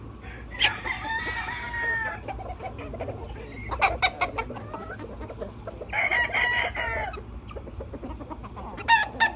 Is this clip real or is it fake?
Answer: real